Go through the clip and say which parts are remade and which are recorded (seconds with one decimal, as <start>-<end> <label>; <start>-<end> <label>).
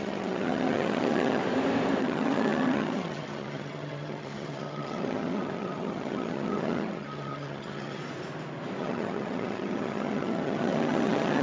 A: 0.0-1.4 remade; 1.4-2.0 recorded; 2.0-8.0 remade; 8.0-8.8 recorded; 8.8-11.4 remade